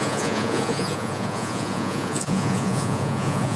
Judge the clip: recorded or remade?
remade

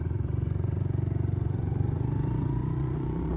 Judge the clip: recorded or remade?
remade